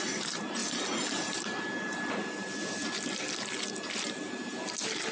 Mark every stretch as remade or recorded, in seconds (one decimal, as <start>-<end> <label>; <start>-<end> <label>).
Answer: 0.0-5.1 recorded